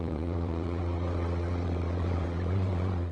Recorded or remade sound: remade